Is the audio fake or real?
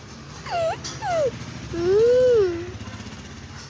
real